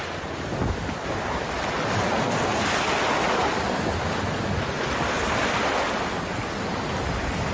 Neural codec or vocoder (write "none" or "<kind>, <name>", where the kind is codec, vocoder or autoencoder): none